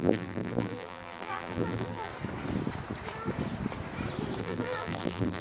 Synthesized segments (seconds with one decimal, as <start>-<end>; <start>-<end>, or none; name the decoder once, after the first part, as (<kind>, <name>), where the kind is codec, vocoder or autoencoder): 0.0-2.1 (vocoder, BigVGAN v2); 4.4-5.4